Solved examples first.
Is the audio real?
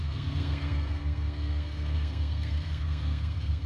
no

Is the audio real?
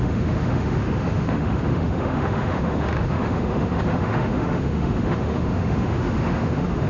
no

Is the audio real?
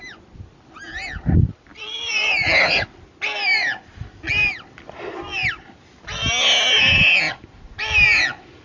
yes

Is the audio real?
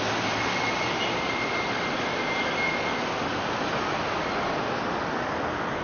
yes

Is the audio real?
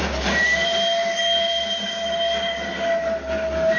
yes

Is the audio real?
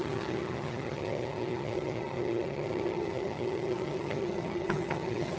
no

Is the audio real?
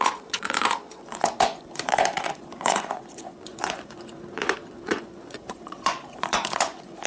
no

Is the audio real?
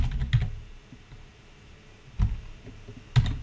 yes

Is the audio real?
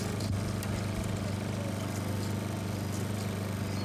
yes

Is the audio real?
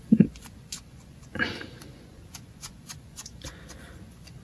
no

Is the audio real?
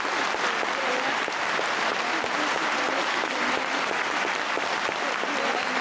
yes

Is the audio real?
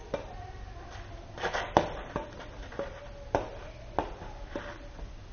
yes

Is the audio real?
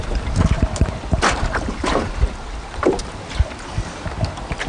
yes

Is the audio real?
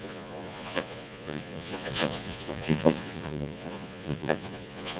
no